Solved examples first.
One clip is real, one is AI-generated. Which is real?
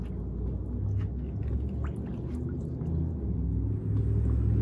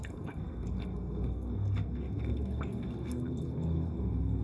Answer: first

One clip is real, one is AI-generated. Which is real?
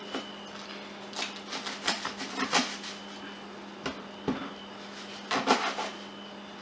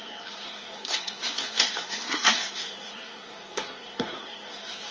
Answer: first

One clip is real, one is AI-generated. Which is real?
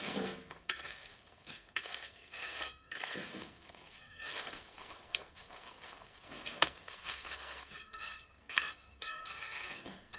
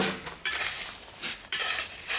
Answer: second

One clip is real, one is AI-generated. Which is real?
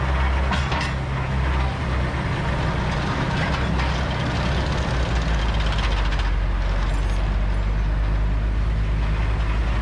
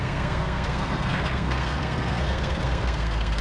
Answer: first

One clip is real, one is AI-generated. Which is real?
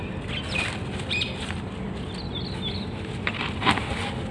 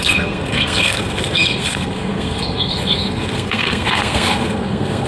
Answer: first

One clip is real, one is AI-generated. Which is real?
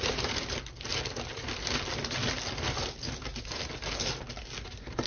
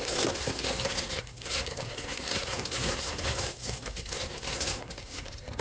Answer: first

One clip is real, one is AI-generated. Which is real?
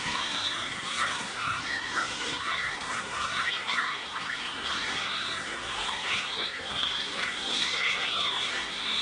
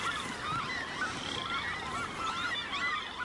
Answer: second